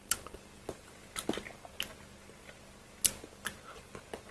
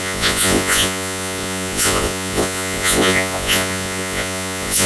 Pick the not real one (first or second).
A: second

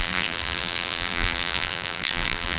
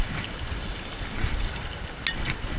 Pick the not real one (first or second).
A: first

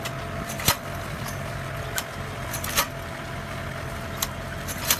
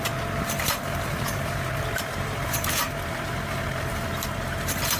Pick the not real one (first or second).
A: second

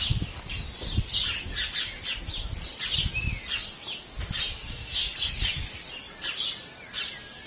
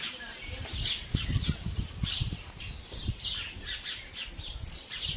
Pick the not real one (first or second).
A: second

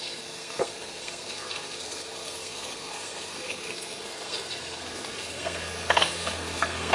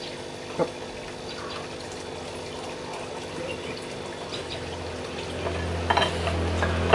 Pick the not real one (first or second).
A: first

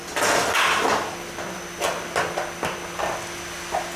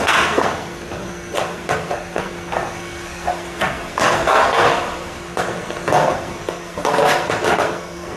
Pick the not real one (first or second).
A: second